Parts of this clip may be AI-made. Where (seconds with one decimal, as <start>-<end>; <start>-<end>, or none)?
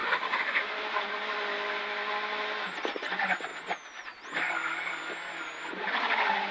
0.0-0.6